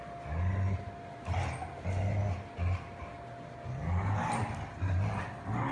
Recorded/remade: recorded